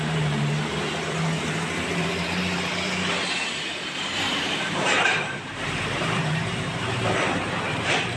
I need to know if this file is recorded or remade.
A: remade